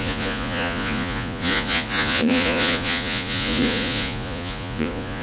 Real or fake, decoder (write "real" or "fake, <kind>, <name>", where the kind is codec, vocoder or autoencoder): fake, vocoder, Vocos